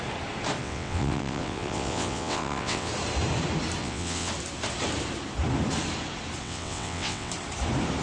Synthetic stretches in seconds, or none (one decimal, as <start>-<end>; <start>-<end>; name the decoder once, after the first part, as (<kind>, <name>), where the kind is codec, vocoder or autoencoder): 0.6-2.9 (vocoder, WaveNeXt); 3.8-4.3; 6.4-7.3